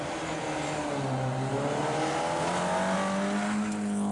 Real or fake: real